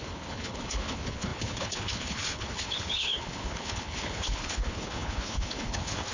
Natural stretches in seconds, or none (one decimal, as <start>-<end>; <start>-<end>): none